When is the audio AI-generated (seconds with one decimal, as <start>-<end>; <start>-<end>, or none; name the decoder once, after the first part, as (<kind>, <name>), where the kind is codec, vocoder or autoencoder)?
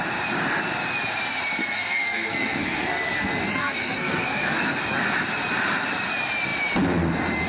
1.6-3.1 (codec, SNAC); 3.5-4.8